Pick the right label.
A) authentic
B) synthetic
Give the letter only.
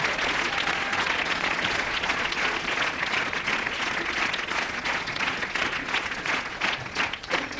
B